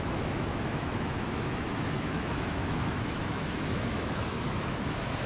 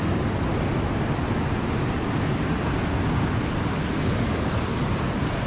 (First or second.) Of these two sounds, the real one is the second